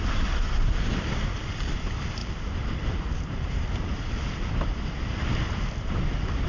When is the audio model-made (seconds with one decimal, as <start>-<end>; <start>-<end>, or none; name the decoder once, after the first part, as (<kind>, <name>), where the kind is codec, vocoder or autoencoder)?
2.2-3.5 (vocoder, BigVGAN v2)